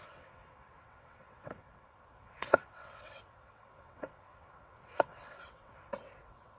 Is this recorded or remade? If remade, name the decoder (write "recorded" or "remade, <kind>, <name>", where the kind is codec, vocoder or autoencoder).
remade, vocoder, WaveNeXt